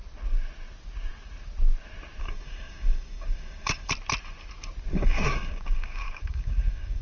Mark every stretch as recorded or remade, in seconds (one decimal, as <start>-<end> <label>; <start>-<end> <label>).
0.0-2.2 recorded; 2.2-3.9 remade; 3.9-4.9 recorded; 4.9-7.0 remade